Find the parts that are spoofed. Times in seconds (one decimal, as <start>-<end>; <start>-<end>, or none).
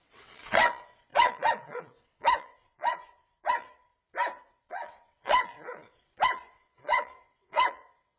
0.0-3.9; 4.5-8.2